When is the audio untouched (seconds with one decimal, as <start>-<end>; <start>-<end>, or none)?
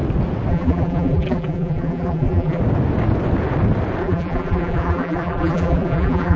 0.0-0.5; 2.6-4.0